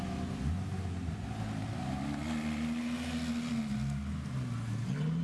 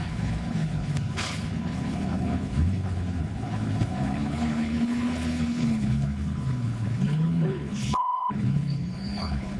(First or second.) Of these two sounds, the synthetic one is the second